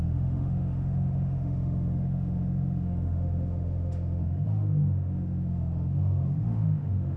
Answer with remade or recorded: remade